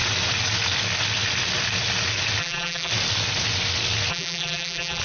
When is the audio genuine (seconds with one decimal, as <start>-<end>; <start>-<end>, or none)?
0.0-2.4; 2.9-4.1